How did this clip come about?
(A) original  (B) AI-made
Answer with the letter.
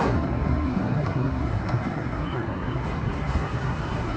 B